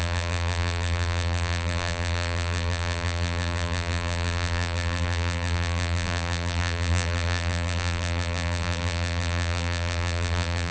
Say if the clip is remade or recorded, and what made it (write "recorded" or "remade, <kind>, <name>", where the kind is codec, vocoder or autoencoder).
remade, vocoder, BigVGAN v2